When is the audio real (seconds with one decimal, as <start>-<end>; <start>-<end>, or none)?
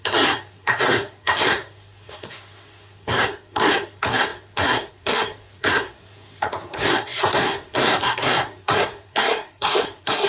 none